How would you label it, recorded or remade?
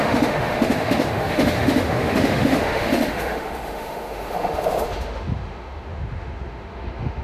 remade